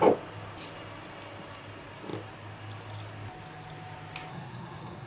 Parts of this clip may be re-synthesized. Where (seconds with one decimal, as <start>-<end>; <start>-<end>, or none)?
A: 4.3-5.1